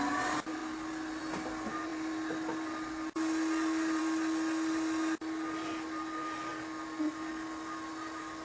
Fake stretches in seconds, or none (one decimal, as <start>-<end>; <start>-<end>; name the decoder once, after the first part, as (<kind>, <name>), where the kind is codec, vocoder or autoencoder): none